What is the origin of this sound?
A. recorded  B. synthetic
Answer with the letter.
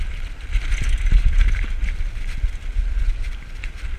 A